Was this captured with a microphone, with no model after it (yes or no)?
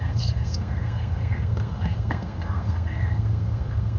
no